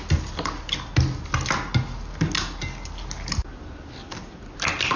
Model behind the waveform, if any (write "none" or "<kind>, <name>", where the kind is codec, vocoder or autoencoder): none